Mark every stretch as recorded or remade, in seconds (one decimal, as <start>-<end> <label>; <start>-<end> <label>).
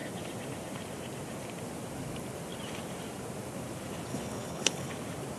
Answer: 0.0-4.1 recorded; 4.1-4.9 remade; 4.9-5.4 recorded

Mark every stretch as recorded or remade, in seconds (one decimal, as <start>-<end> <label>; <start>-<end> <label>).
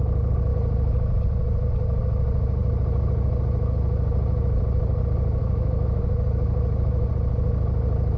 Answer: 0.0-5.4 recorded; 5.4-7.1 remade; 7.1-8.2 recorded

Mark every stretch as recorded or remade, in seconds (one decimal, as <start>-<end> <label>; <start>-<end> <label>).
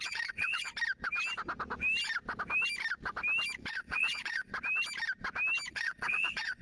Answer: 0.0-0.7 remade; 0.7-3.7 recorded; 3.7-4.5 remade; 4.5-5.7 recorded; 5.7-6.6 remade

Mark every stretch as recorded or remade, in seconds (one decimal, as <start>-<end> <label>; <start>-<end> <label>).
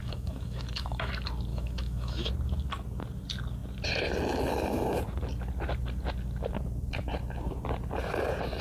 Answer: 0.0-1.1 remade; 1.1-1.5 recorded; 1.5-2.3 remade; 2.3-8.6 recorded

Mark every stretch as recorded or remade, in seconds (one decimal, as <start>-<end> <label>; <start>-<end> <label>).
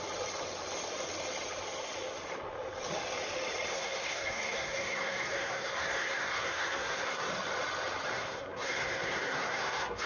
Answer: 0.0-3.7 recorded; 3.7-7.3 remade; 7.3-8.1 recorded; 8.1-10.1 remade